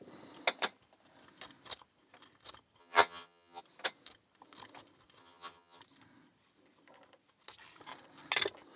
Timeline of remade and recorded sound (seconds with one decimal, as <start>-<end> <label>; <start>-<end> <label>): 0.0-2.8 recorded; 2.8-3.6 remade; 3.6-5.2 recorded; 5.2-5.8 remade; 5.8-8.8 recorded